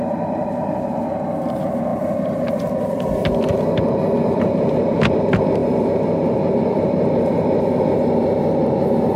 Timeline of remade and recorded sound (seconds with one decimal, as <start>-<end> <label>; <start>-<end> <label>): 0.0-9.2 remade

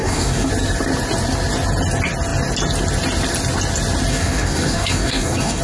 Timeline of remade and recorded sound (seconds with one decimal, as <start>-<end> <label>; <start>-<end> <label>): 0.0-0.5 remade; 0.5-4.1 recorded; 4.1-5.6 remade

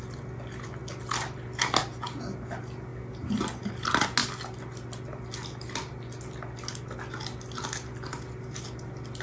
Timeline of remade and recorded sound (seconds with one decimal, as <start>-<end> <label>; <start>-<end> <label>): 0.0-9.2 recorded

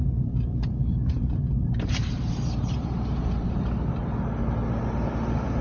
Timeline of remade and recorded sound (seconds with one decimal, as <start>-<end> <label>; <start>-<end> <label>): 0.0-3.2 remade; 3.2-4.8 recorded; 4.8-5.6 remade

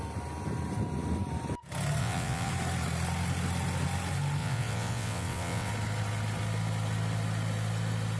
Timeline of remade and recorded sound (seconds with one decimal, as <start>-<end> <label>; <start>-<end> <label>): 0.0-2.0 recorded; 2.0-2.5 remade; 2.5-4.4 recorded; 4.4-5.7 remade; 5.7-8.2 recorded